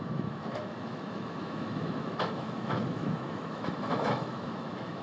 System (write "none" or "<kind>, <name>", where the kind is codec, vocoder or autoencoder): autoencoder, DAC-VAE